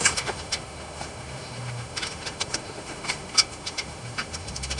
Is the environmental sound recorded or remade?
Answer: remade